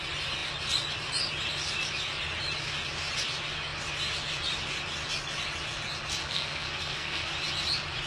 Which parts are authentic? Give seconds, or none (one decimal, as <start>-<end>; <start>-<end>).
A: 0.0-6.2; 7.3-8.1